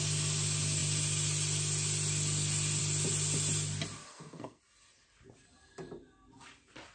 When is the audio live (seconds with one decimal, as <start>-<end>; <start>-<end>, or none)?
0.0-4.0; 4.6-6.9